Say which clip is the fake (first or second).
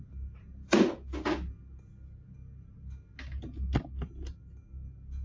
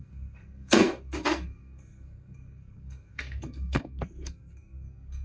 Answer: second